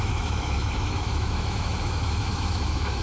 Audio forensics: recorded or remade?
remade